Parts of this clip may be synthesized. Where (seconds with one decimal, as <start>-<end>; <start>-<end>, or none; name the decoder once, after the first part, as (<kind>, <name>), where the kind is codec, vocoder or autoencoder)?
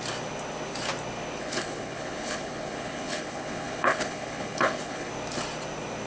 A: 1.4-5.1 (codec, HILCodec)